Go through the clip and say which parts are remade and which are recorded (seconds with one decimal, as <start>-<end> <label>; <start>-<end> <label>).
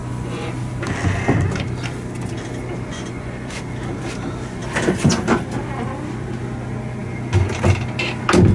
0.0-0.5 remade; 0.5-2.9 recorded; 2.9-3.6 remade; 3.6-8.5 recorded